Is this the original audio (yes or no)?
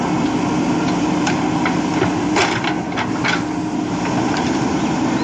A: yes